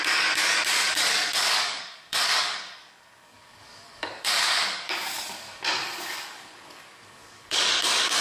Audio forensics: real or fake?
fake